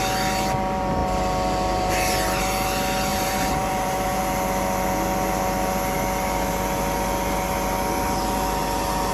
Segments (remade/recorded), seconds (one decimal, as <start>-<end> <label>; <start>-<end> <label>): 0.0-3.1 recorded; 3.1-4.2 remade; 4.2-9.1 recorded